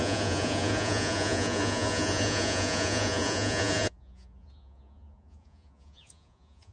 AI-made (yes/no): yes